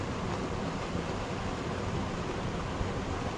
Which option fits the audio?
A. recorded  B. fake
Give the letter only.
A